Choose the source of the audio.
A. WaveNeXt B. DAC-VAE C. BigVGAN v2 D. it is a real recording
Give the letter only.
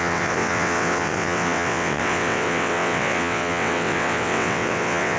A